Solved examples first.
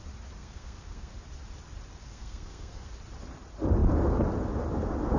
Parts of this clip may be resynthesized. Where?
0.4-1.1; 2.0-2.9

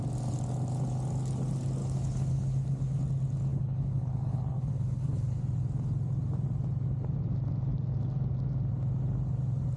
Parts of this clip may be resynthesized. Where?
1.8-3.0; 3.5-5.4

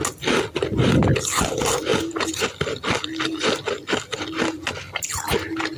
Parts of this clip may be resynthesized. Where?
none